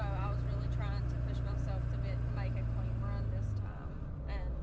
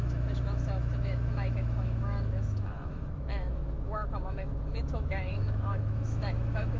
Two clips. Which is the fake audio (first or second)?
second